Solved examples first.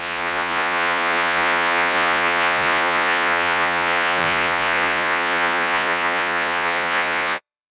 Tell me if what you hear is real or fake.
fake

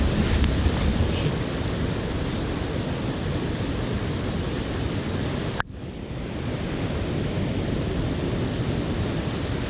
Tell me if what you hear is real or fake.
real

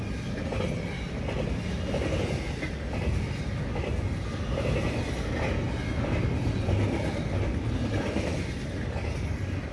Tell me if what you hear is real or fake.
real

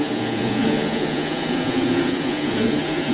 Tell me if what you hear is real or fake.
fake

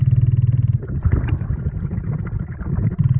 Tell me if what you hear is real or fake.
real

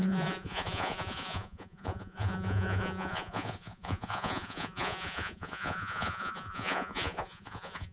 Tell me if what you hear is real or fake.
fake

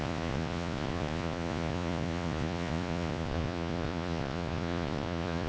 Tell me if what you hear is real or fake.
fake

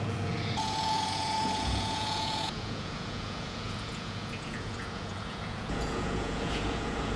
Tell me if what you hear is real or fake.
fake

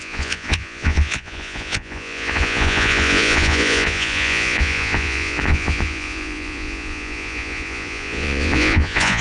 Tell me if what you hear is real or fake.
fake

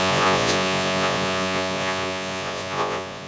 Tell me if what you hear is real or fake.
fake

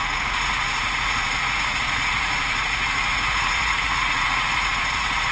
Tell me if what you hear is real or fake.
fake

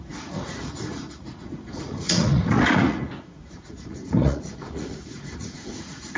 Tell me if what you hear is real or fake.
fake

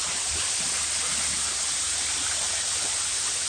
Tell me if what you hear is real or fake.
real